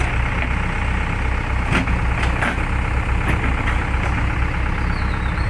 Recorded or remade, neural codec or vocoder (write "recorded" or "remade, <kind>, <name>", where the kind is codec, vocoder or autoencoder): recorded